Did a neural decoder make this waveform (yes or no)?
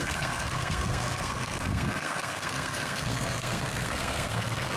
yes